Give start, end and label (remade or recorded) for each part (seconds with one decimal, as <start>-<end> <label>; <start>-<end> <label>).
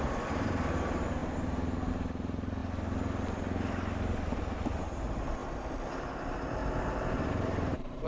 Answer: 0.0-2.6 remade; 2.6-4.8 recorded; 4.8-5.4 remade; 5.4-6.0 recorded; 6.0-6.6 remade; 6.6-7.1 recorded; 7.1-8.1 remade